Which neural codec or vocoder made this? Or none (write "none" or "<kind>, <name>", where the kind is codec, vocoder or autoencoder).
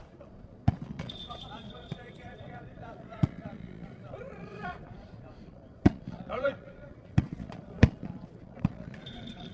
vocoder, Vocos